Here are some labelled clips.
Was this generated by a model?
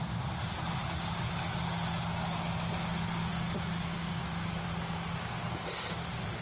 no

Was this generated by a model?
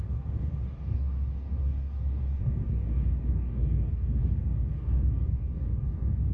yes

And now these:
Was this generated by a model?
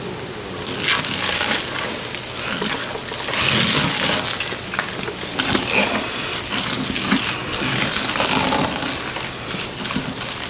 no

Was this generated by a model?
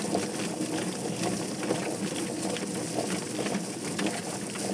no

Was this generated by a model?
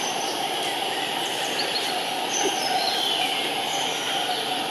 no